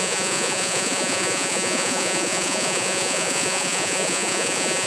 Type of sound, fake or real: fake